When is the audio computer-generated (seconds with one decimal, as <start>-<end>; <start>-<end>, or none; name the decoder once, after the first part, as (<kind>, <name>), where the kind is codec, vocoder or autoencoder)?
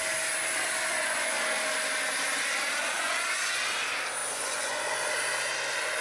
0.9-1.4 (vocoder, Vocos); 2.8-3.6; 4.2-5.1